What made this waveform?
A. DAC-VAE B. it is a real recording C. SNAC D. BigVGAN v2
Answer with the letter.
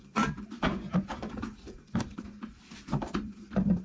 D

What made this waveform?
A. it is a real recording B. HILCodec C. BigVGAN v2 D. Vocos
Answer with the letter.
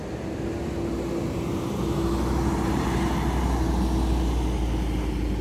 A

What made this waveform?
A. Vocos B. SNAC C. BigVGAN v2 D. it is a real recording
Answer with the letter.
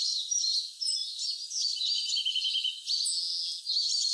D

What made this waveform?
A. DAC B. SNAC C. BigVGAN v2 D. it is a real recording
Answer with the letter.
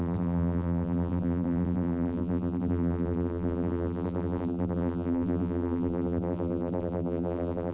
C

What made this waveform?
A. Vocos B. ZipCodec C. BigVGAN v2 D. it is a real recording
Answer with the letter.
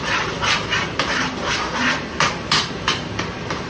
C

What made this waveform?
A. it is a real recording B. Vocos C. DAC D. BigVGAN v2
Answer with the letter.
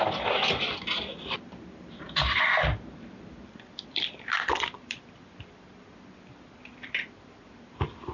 D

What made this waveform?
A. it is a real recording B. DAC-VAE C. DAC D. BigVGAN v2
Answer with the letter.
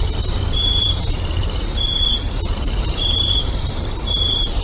D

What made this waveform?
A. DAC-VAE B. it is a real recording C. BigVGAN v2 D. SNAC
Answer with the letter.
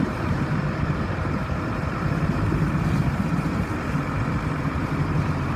C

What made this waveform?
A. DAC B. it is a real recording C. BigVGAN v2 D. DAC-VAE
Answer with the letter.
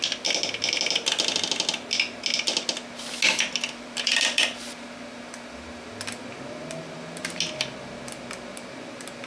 B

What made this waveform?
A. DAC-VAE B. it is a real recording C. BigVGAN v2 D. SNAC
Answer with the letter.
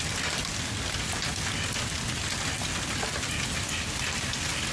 B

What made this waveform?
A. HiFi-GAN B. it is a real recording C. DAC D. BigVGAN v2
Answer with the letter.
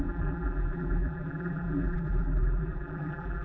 D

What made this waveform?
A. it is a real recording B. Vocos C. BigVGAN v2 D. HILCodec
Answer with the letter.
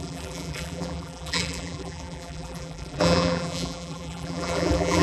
C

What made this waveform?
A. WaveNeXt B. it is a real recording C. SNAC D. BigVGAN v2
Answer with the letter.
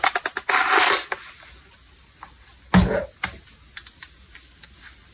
B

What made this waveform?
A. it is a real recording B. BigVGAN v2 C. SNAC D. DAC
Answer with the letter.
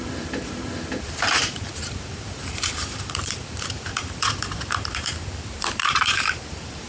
B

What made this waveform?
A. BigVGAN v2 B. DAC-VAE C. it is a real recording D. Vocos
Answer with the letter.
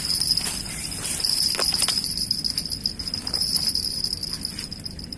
C